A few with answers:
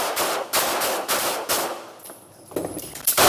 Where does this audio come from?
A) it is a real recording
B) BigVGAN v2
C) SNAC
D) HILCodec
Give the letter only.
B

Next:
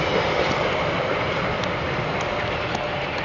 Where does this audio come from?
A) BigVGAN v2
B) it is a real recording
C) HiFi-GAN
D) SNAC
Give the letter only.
B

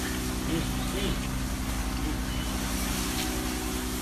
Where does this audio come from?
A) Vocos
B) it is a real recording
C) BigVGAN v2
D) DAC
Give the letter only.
B